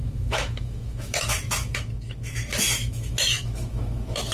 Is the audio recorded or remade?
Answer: remade